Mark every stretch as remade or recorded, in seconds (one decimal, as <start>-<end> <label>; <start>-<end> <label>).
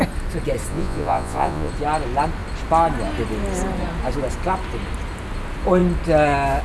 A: 0.0-0.7 recorded; 0.7-1.7 remade; 1.7-6.6 recorded